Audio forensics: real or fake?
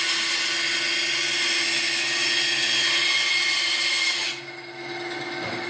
real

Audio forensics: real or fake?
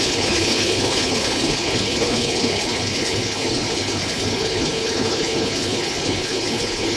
fake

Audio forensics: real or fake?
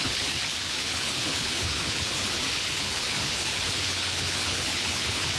fake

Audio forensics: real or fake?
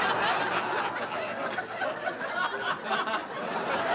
real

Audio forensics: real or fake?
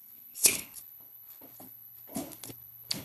fake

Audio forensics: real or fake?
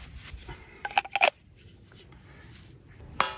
real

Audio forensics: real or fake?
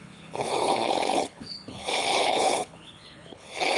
fake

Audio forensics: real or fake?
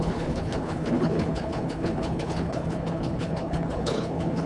fake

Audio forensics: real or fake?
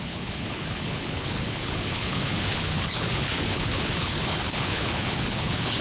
fake